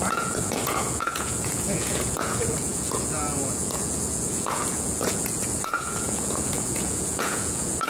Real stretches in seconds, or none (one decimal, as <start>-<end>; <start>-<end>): none